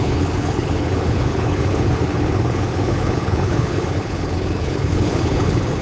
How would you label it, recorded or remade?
remade